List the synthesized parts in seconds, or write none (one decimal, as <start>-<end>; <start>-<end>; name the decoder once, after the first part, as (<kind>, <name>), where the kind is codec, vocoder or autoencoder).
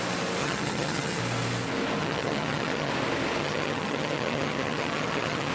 0.4-1.2 (vocoder, HiFi-GAN); 2.0-2.9; 3.4-5.5